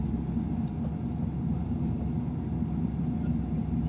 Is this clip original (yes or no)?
yes